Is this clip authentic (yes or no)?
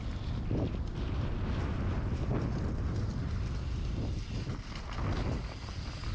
yes